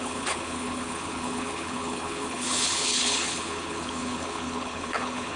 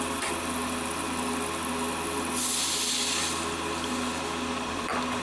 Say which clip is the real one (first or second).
second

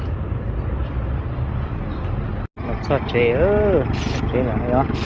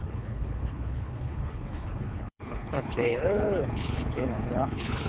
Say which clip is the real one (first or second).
first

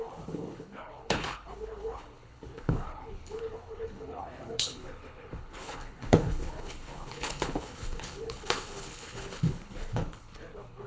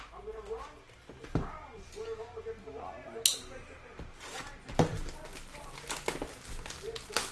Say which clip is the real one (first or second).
second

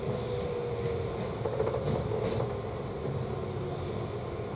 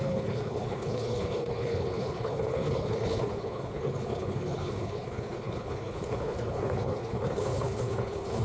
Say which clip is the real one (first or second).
first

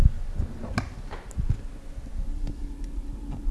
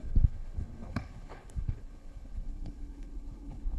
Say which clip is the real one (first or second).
first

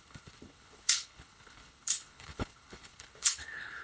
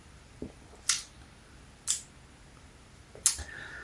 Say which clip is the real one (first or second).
second